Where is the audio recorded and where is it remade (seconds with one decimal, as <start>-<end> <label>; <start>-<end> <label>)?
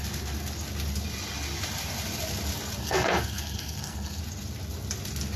0.0-2.8 recorded; 2.8-4.2 remade; 4.2-5.4 recorded